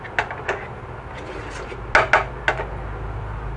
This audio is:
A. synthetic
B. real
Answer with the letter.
B